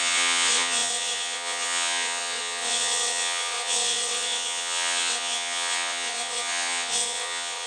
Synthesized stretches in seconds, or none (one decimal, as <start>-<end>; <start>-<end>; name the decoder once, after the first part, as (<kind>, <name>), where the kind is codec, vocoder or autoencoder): 0.0-7.7 (vocoder, WaveNeXt)